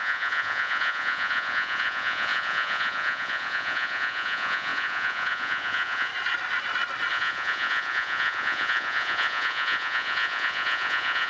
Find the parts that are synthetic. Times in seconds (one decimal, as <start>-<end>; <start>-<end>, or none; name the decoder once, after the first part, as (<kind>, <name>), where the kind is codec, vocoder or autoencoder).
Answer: 0.0-6.1 (vocoder, Vocos); 7.1-11.3